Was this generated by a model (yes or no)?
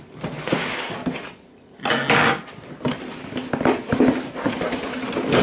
no